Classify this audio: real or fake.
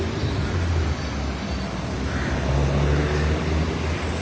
real